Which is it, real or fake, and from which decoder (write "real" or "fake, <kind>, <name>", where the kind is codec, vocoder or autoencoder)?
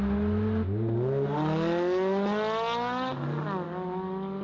real